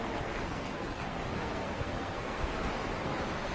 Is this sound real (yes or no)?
no